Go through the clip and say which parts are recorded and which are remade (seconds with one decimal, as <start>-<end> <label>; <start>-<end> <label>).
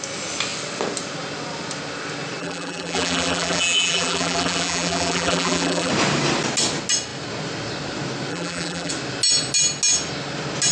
0.0-2.4 recorded; 2.4-5.9 remade; 5.9-8.3 recorded; 8.3-8.9 remade; 8.9-10.7 recorded